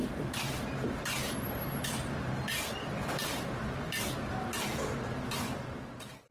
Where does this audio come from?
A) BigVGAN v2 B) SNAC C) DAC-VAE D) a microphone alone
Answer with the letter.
D